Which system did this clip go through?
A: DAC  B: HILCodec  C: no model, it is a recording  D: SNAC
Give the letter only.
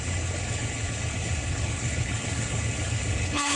B